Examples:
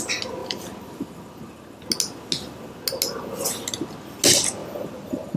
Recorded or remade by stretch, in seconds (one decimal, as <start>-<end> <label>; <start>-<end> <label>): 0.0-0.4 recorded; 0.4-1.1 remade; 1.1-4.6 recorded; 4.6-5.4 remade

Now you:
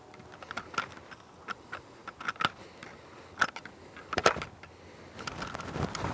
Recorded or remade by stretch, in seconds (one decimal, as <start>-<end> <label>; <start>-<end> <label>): 0.0-6.1 recorded

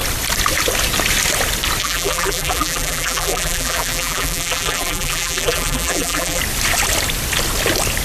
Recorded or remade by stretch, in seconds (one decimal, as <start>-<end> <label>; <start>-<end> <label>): 0.0-1.8 recorded; 1.8-6.4 remade; 6.4-8.0 recorded

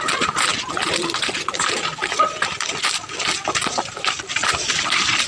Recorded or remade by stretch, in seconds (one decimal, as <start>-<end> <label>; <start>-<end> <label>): 0.0-0.5 remade; 0.5-3.7 recorded; 3.7-5.3 remade

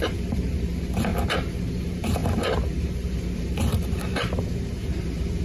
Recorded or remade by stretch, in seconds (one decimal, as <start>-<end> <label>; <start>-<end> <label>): 0.0-1.1 remade; 1.1-1.7 recorded; 1.7-5.4 remade

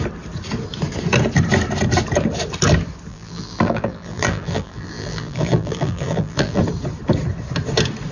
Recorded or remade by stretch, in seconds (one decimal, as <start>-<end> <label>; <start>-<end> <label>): 0.0-3.1 recorded; 3.1-6.6 remade; 6.6-8.1 recorded

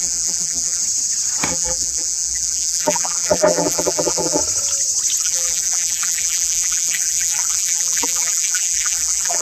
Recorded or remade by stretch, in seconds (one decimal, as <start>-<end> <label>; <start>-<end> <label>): 0.0-0.8 remade; 0.8-1.5 recorded; 1.5-4.4 remade; 4.4-5.2 recorded; 5.2-9.4 remade